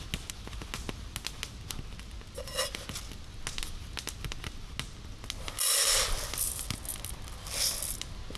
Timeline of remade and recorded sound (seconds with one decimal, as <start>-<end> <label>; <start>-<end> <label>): 0.0-8.4 recorded